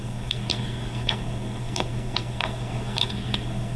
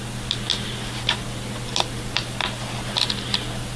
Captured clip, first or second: second